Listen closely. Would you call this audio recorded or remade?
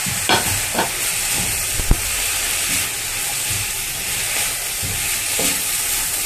recorded